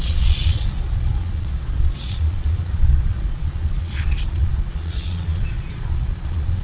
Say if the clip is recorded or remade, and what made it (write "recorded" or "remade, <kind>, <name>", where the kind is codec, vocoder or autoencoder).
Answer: remade, vocoder, Vocos